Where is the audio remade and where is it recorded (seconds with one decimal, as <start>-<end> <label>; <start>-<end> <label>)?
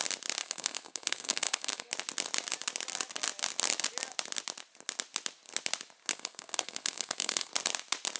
0.0-0.4 recorded; 0.4-1.9 remade; 1.9-6.1 recorded; 6.1-7.5 remade; 7.5-8.2 recorded